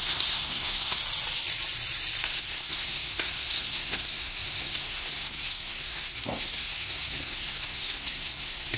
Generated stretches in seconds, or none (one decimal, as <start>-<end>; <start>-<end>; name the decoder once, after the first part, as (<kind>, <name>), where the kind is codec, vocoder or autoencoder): 0.0-1.0 (codec, SNAC); 2.2-8.8